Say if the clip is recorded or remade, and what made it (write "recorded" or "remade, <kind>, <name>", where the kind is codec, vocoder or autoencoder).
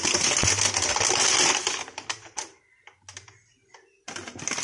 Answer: recorded